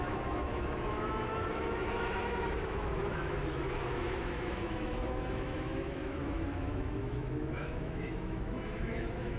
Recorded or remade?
remade